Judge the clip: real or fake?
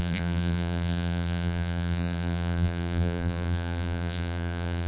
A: fake